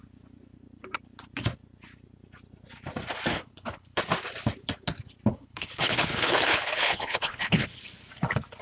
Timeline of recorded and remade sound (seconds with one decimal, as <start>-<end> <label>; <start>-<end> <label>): 0.0-3.3 recorded; 3.3-4.0 remade; 4.0-5.3 recorded; 5.3-7.8 remade; 7.8-8.6 recorded

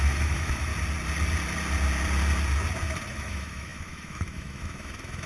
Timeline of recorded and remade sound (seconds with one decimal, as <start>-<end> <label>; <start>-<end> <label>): 0.0-0.7 remade; 0.7-3.1 recorded; 3.1-5.3 remade